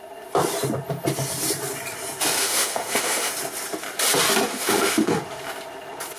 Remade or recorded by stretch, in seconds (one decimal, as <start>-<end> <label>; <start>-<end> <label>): 0.0-2.4 recorded; 2.4-3.3 remade; 3.3-4.5 recorded; 4.5-5.1 remade; 5.1-6.2 recorded